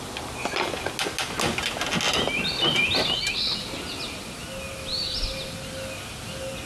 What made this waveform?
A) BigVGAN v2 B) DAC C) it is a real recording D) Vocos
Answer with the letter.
C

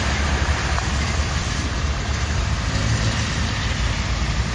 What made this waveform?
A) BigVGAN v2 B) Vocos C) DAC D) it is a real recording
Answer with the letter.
A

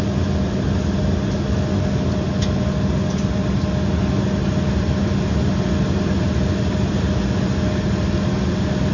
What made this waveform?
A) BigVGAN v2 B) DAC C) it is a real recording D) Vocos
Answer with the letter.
C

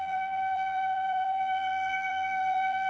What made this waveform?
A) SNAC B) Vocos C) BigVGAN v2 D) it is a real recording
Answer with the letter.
C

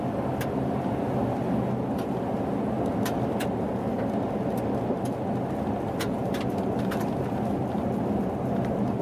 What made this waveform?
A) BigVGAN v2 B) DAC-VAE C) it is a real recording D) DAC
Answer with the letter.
C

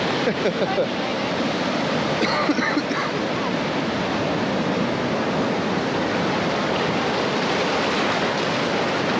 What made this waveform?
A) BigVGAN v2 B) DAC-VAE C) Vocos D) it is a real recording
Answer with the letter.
D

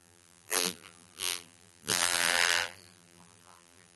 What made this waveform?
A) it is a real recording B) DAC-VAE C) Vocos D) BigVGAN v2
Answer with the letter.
D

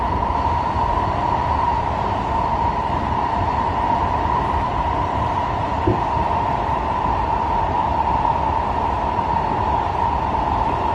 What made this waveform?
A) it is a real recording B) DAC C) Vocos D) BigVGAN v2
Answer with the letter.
D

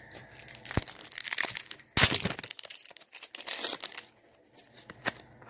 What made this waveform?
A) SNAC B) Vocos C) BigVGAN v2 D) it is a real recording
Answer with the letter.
D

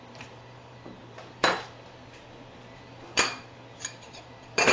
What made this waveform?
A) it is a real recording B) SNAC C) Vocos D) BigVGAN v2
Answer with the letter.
D